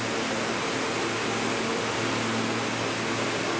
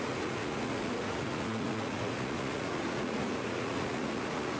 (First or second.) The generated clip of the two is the second